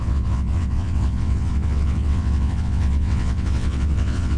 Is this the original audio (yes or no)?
no